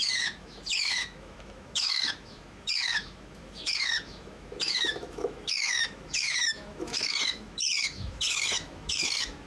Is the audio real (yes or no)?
no